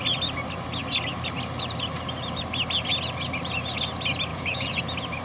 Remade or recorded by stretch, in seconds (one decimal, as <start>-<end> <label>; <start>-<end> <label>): 0.0-4.3 recorded; 4.3-4.8 remade; 4.8-5.2 recorded